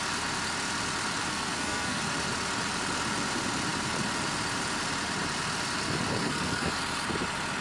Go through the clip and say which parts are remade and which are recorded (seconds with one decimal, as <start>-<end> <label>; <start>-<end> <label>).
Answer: 0.0-1.3 recorded; 1.3-2.0 remade; 2.0-6.2 recorded; 6.2-6.7 remade; 6.7-7.6 recorded